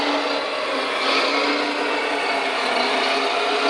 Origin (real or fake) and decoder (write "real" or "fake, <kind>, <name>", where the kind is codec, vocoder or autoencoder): real